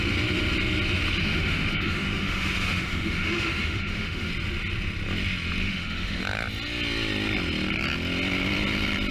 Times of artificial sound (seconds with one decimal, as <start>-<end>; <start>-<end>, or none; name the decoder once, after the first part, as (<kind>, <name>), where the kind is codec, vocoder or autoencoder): 1.2-4.3 (autoencoder, DAC-VAE); 5.6-6.2